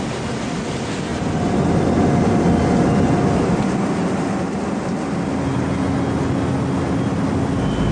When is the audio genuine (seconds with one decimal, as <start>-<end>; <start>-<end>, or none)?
0.0-7.9